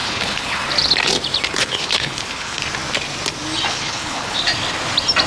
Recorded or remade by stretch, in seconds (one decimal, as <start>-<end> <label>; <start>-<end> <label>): 0.0-0.6 remade; 0.6-1.6 recorded; 1.6-2.6 remade; 2.6-3.7 recorded; 3.7-4.4 remade; 4.4-5.3 recorded